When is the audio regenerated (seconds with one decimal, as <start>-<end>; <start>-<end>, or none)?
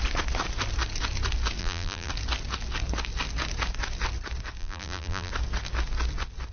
1.6-2.1; 4.6-5.3